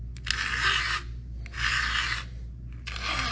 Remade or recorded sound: recorded